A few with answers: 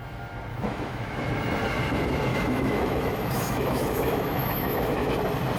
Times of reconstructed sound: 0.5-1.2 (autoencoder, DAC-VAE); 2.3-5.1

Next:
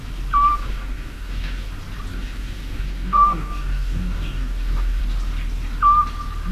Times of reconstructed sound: 0.5-1.7 (codec, DAC); 2.1-5.0

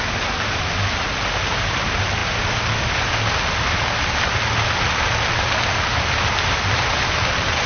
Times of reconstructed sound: none

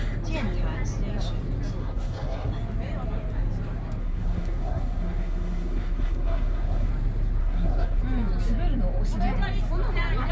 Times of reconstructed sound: 1.8-2.5 (codec, SNAC); 4.0-6.9; 7.4-8.0

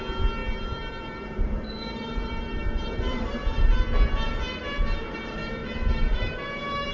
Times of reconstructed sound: 0.4-3.3 (vocoder, BigVGAN v2); 5.6-6.9

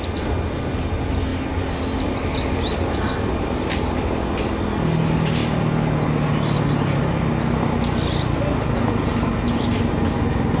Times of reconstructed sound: none

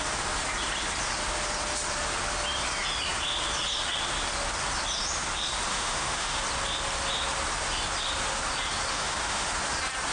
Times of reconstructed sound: 5.7-6.4 (autoencoder, DAC-VAE); 8.9-9.5

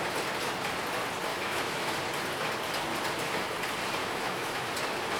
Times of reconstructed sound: 1.3-1.9 (autoencoder, DAC-VAE); 4.0-4.7